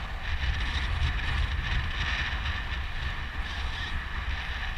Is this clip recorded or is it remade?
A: recorded